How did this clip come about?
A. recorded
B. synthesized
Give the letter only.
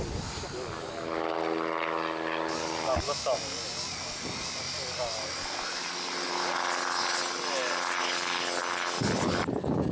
A